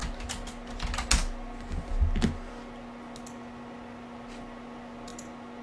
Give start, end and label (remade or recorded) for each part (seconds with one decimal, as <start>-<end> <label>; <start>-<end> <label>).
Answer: 0.0-5.6 recorded